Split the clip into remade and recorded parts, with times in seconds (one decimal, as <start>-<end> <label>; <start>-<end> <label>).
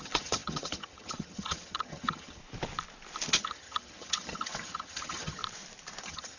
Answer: 0.0-2.4 remade; 2.4-3.3 recorded; 3.3-5.4 remade; 5.4-6.0 recorded; 6.0-6.4 remade